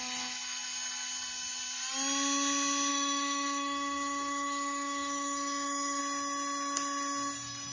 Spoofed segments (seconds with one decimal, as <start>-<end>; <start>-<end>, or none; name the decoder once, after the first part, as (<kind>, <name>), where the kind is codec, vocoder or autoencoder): 2.9-6.0 (autoencoder, DAC-VAE)